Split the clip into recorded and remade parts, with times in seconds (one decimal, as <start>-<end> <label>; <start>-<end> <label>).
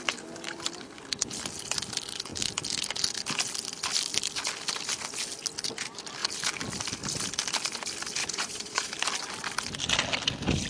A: 0.0-8.2 recorded; 8.2-8.9 remade; 8.9-10.7 recorded